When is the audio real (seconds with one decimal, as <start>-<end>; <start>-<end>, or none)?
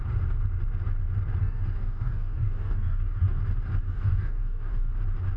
0.0-1.4; 3.4-3.8; 4.9-5.4